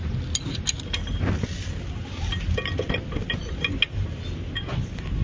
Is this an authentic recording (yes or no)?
yes